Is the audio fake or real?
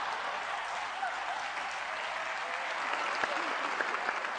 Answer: real